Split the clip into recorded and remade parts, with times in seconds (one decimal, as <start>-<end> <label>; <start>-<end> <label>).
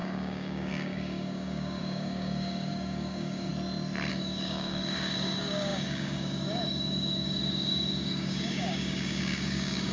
0.0-3.5 remade; 3.5-4.1 recorded; 4.1-9.9 remade